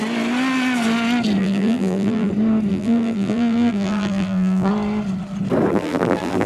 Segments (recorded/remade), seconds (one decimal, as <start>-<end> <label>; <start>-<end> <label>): 0.0-1.4 recorded; 1.4-2.3 remade; 2.3-2.7 recorded; 2.7-4.7 remade; 4.7-5.7 recorded; 5.7-6.5 remade